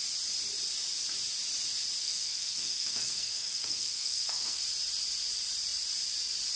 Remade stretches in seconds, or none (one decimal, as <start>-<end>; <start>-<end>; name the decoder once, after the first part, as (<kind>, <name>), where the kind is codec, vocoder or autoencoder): 2.0-4.6 (codec, SNAC)